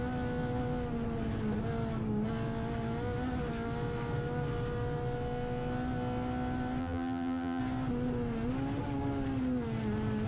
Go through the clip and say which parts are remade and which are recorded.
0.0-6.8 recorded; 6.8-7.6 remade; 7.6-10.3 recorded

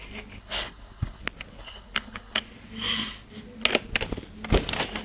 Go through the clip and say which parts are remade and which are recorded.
0.0-0.4 recorded; 0.4-1.2 remade; 1.2-1.6 recorded; 1.6-2.4 remade; 2.4-5.0 recorded

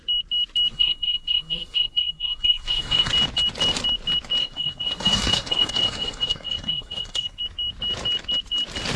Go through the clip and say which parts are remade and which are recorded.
0.0-0.7 recorded; 0.7-3.1 remade; 3.1-4.4 recorded; 4.4-7.4 remade; 7.4-9.0 recorded

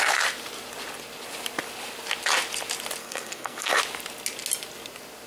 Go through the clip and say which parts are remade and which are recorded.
0.0-3.0 recorded; 3.0-3.8 remade; 3.8-5.3 recorded

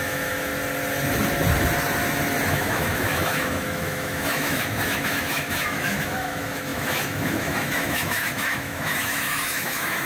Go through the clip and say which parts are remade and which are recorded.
0.0-0.5 remade; 0.5-2.5 recorded; 2.5-10.1 remade

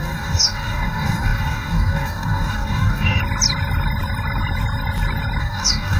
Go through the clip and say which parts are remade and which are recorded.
0.0-3.2 remade; 3.2-5.4 recorded; 5.4-6.0 remade

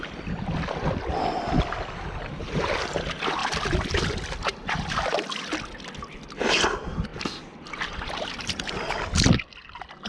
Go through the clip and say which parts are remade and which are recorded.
0.0-10.1 recorded

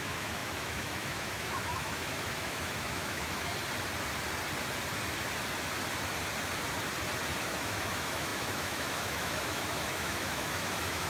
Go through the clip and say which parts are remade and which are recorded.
0.0-3.5 remade; 3.5-7.4 recorded; 7.4-11.1 remade